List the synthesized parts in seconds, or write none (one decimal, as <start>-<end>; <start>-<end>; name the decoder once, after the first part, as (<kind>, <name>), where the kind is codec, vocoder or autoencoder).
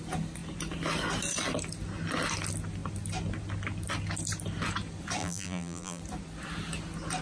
5.2-6.0 (vocoder, BigVGAN v2)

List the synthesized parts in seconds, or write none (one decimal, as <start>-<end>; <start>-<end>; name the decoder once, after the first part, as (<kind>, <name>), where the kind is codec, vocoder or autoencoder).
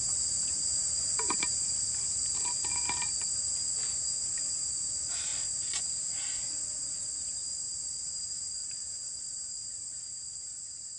0.0-2.2 (vocoder, BigVGAN v2); 3.2-5.3; 7.2-8.6; 9.2-11.0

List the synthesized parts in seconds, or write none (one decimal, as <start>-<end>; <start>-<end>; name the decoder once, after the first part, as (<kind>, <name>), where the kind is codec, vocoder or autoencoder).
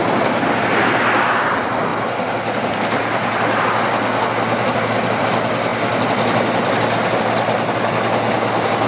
none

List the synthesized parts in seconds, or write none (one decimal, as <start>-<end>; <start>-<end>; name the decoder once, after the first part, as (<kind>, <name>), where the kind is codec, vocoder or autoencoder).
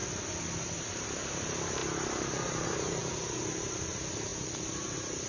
0.8-1.8 (vocoder, BigVGAN v2); 2.3-5.3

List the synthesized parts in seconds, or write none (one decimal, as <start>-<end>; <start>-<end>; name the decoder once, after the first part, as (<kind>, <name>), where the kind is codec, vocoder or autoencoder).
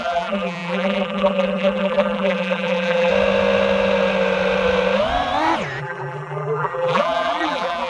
0.0-3.1 (vocoder, BigVGAN v2); 5.8-7.9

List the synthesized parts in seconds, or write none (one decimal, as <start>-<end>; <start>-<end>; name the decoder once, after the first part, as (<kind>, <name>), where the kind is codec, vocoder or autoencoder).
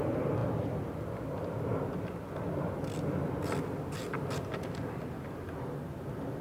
none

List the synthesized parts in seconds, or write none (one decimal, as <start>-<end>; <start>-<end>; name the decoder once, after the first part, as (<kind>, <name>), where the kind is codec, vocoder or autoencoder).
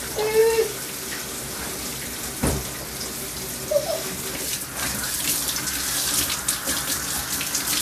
0.4-5.1 (vocoder, BigVGAN v2)